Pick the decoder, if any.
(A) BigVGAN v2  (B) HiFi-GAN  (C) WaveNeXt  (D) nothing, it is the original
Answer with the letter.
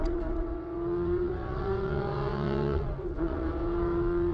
C